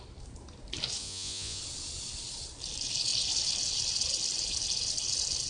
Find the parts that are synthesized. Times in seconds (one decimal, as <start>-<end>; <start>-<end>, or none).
1.0-1.6